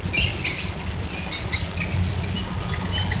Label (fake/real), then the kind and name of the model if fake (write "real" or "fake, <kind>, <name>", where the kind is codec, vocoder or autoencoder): real